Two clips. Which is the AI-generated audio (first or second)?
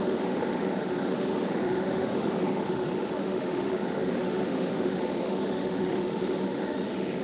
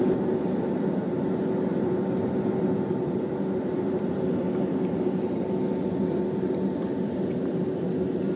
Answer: first